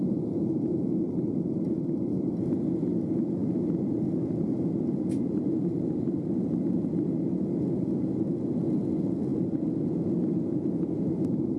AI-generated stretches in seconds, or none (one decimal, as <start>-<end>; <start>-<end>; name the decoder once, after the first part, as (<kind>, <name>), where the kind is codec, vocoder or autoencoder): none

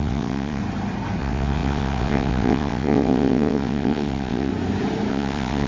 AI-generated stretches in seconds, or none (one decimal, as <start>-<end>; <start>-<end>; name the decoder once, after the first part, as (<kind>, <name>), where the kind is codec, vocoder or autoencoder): 0.0-0.6 (vocoder, WaveNeXt); 1.2-4.5; 5.1-5.7

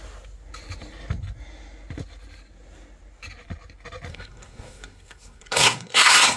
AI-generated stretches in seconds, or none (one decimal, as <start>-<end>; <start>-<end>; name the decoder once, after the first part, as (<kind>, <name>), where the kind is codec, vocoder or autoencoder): 4.1-6.4 (codec, SNAC)

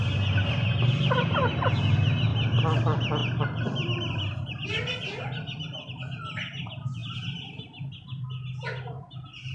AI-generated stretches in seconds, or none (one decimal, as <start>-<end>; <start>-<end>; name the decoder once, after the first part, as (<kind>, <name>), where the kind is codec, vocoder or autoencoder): none